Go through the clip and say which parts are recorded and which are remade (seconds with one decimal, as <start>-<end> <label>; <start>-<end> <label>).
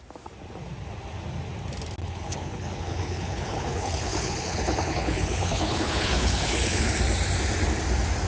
0.0-2.0 recorded; 2.0-7.0 remade; 7.0-8.3 recorded